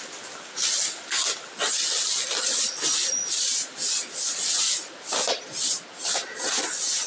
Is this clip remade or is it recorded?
recorded